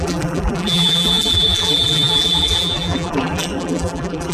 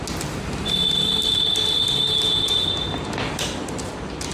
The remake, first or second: first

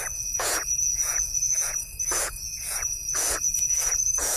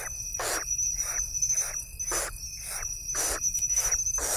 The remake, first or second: first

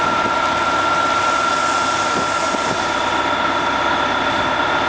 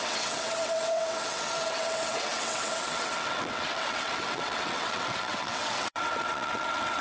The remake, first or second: second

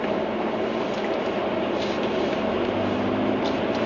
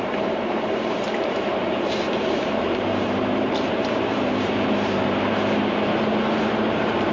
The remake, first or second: second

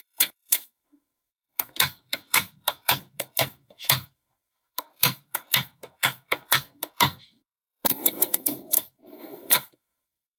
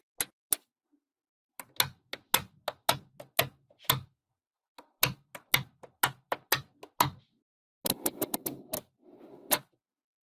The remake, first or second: first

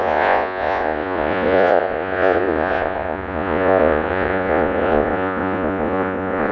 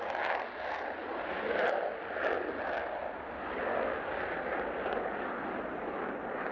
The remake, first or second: first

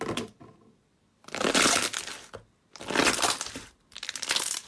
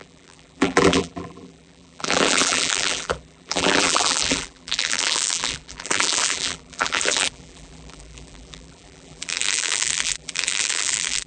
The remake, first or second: second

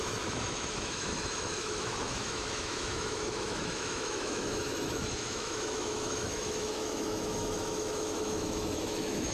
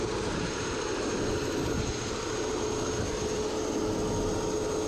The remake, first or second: first